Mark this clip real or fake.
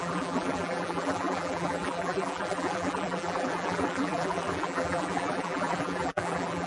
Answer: fake